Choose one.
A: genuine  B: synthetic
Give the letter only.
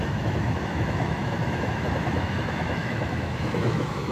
B